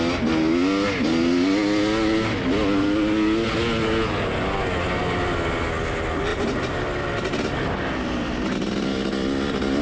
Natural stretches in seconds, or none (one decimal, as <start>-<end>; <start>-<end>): 0.0-9.8

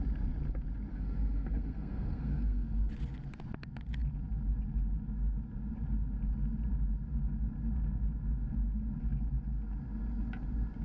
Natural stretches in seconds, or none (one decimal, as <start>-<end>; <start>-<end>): 0.0-0.9; 2.9-10.8

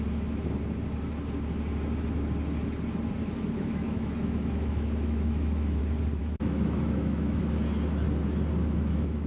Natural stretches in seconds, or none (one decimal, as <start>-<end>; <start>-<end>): 0.0-3.2; 5.8-6.2; 7.4-8.6

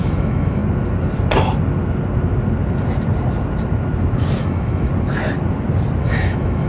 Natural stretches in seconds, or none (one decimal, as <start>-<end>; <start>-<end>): 0.6-4.4; 4.9-6.0